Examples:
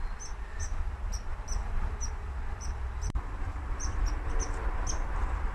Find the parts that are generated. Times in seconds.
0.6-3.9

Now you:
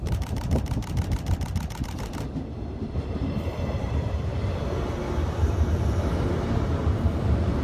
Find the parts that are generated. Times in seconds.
0.0-0.8; 1.8-4.3; 7.1-7.6

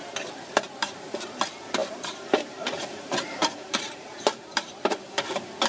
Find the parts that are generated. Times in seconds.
0.8-1.4; 1.8-5.2

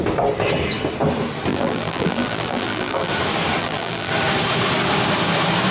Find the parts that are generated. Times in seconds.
1.5-3.1; 3.6-4.1

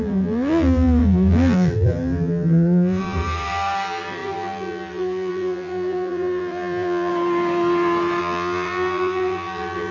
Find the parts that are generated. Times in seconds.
0.0-7.1; 8.2-9.9